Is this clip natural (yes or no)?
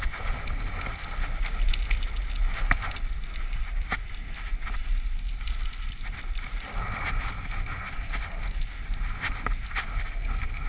yes